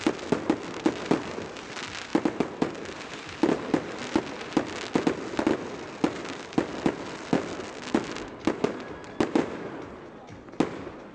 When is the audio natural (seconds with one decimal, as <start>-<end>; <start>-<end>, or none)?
0.0-11.1